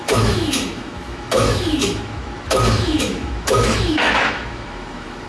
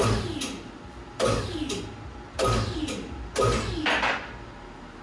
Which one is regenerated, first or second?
first